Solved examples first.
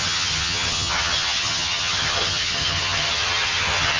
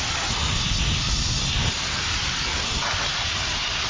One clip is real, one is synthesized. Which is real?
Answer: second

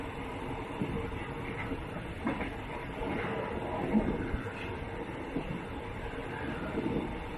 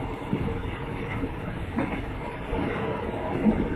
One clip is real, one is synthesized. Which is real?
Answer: first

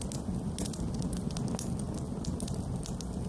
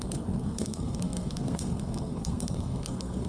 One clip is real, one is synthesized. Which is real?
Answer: first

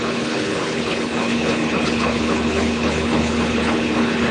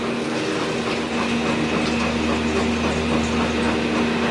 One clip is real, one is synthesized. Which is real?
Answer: second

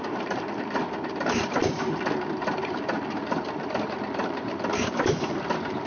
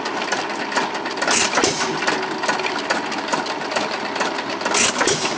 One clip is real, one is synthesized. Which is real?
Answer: second